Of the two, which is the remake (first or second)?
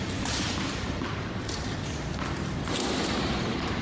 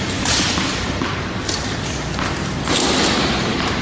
first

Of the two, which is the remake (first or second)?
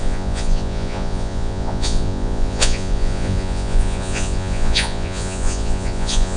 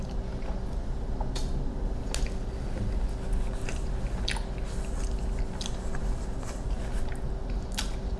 first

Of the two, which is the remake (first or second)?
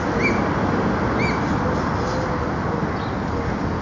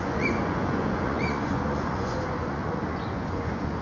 second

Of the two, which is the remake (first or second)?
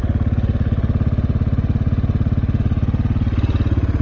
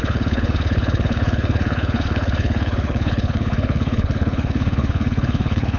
second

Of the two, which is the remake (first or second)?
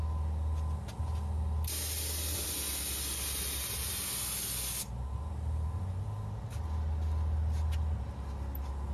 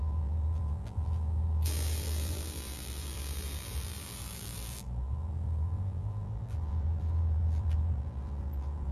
second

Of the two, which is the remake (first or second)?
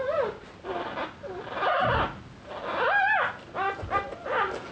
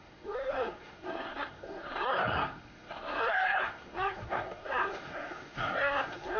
second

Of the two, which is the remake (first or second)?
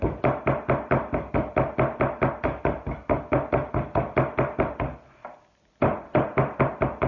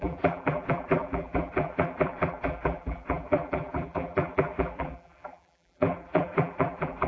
second